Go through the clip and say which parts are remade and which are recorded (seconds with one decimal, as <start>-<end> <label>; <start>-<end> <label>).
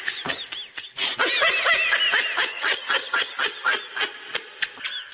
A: 0.0-2.5 recorded; 2.5-3.3 remade; 3.3-5.1 recorded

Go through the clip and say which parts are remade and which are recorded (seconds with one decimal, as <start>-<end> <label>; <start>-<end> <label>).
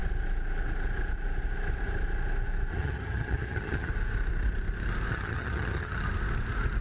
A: 0.0-2.7 recorded; 2.7-3.9 remade; 3.9-5.1 recorded; 5.1-6.1 remade; 6.1-6.8 recorded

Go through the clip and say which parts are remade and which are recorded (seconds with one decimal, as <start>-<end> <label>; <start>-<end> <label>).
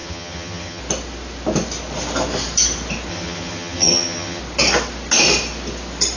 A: 0.0-0.8 remade; 0.8-3.1 recorded; 3.1-4.4 remade; 4.4-6.2 recorded